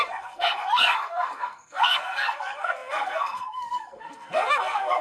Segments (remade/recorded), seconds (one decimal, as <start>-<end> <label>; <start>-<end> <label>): 0.0-5.0 remade